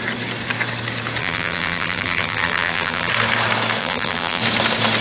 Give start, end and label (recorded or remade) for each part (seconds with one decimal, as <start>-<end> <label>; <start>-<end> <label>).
0.0-1.2 recorded; 1.2-3.1 remade; 3.1-3.8 recorded; 3.8-4.4 remade; 4.4-5.0 recorded